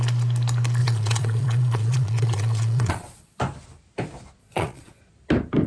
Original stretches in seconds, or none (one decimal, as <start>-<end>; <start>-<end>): 0.0-0.8; 3.4-4.4; 5.0-5.7